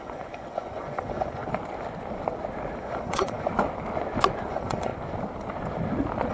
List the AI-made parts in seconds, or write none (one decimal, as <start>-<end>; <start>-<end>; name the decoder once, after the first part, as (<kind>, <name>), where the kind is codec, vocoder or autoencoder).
0.0-1.4 (vocoder, Vocos); 2.8-3.5; 4.5-4.9